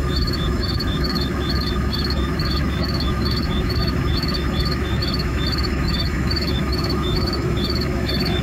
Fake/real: fake